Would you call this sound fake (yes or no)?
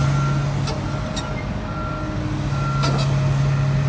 no